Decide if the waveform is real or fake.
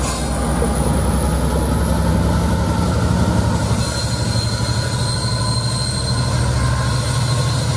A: real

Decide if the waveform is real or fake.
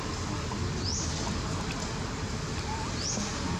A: real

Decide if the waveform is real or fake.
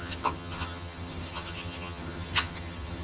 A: fake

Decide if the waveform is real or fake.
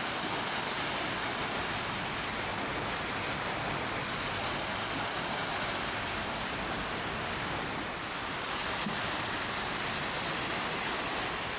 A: real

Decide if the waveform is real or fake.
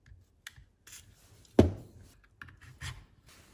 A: real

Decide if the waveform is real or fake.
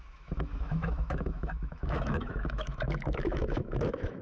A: fake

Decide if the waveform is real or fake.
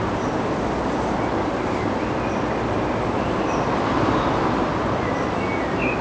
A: real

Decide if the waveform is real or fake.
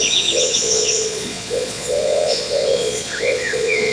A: fake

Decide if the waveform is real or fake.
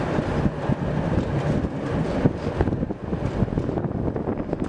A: real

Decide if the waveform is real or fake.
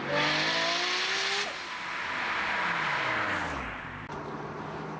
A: real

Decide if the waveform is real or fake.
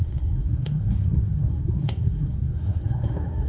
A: fake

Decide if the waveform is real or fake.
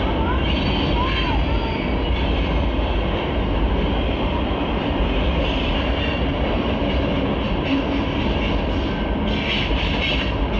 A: real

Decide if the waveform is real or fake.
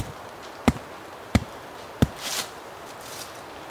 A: fake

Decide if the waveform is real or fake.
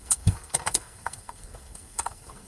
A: fake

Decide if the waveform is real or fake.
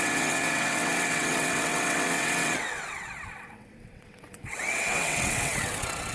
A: fake